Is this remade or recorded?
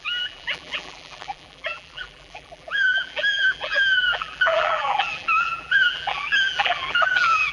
remade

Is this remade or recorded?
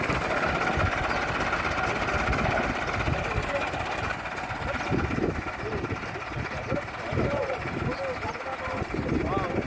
recorded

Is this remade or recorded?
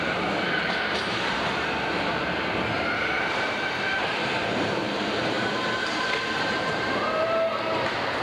remade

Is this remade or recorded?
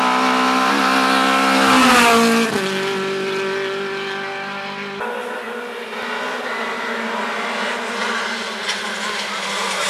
recorded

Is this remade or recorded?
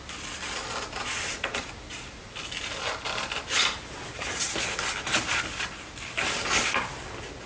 recorded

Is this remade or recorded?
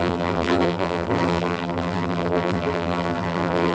remade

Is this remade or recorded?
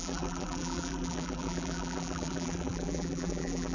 remade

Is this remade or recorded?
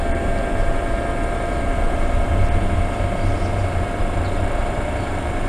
remade